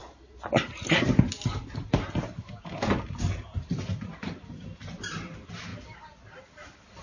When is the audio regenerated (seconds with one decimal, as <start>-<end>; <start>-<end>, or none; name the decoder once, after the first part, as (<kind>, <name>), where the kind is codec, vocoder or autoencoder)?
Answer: none